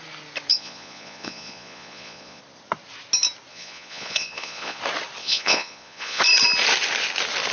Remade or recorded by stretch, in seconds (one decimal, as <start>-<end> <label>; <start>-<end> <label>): 0.0-0.5 recorded; 0.5-2.4 remade; 2.4-3.5 recorded; 3.5-4.8 remade; 4.8-5.2 recorded; 5.2-6.2 remade; 6.2-7.5 recorded